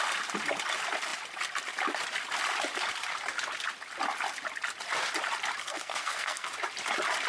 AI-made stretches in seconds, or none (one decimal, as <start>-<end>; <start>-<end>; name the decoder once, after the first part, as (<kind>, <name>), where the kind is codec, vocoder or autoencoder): 5.6-6.5 (codec, SNAC)